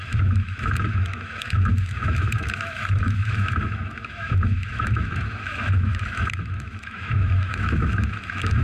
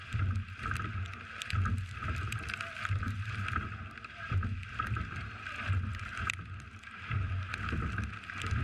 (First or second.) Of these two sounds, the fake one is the first